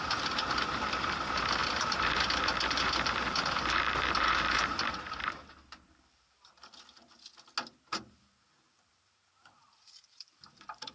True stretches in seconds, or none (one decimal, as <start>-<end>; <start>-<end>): 7.3-8.7